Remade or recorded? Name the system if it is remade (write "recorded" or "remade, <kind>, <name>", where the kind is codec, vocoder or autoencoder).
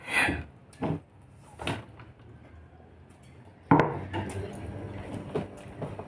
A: recorded